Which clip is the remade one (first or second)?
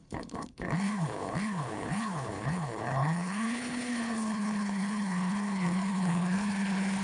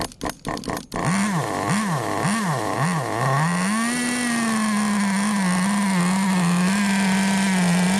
first